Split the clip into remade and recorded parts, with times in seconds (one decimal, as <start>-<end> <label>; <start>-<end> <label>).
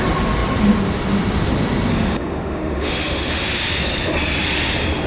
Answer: 0.0-1.9 recorded; 1.9-3.4 remade; 3.4-5.1 recorded